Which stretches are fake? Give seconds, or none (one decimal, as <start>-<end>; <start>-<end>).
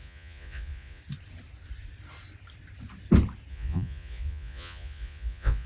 0.0-1.0; 3.5-5.7